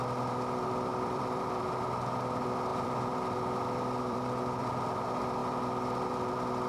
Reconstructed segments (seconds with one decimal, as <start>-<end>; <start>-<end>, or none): 0.9-1.6; 2.7-4.6